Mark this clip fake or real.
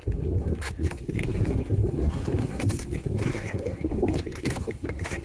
fake